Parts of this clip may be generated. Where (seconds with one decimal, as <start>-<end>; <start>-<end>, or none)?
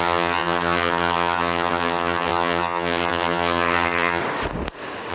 0.0-4.2